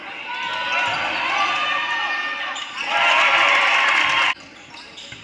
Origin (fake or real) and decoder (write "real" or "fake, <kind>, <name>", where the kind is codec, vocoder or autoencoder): real